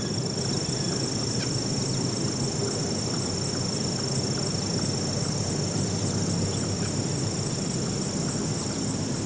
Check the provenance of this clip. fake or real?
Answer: real